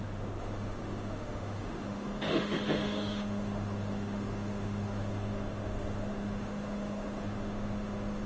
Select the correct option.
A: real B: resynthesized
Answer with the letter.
B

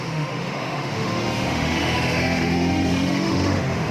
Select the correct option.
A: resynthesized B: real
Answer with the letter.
A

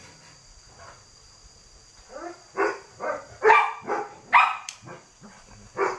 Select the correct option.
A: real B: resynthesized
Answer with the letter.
A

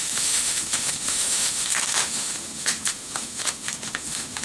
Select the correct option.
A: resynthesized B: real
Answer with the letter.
A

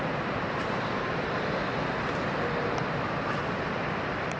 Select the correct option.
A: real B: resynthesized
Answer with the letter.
A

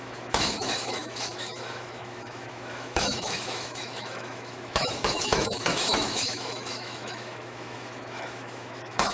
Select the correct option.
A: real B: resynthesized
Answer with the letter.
B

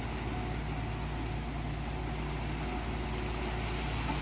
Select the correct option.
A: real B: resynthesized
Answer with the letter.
A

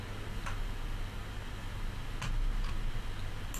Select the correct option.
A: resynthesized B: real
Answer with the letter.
B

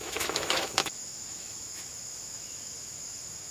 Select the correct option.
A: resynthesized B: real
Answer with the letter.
A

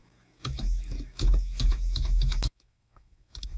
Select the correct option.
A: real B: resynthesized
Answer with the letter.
B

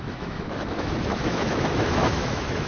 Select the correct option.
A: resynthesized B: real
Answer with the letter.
A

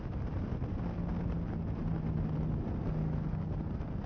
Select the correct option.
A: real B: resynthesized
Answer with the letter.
A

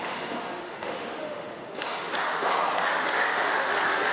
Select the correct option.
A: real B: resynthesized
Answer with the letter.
B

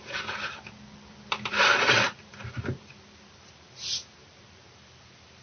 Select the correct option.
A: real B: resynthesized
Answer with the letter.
A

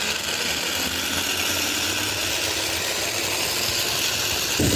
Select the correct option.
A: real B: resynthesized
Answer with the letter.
A